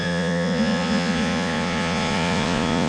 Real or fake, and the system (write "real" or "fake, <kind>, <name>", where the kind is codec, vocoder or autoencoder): fake, vocoder, Vocos